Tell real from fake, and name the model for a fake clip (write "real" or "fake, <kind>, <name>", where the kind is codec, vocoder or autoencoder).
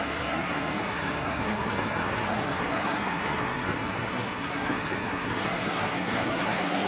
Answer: fake, codec, SNAC